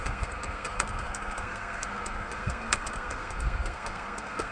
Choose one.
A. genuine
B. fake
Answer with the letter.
B